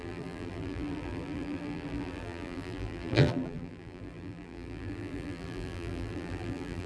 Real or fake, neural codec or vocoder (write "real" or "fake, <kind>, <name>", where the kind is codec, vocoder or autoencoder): fake, vocoder, BigVGAN v2